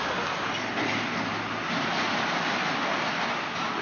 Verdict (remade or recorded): recorded